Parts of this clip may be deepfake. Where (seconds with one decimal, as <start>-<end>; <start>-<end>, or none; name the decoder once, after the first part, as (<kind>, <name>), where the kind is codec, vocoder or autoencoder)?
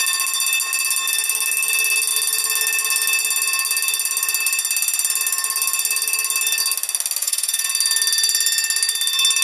7.2-7.7 (vocoder, Vocos)